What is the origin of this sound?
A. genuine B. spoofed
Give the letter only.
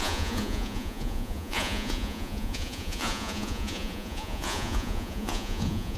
B